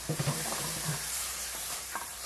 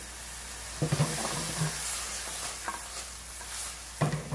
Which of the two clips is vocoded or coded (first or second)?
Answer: first